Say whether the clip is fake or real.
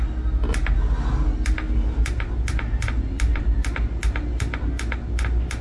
real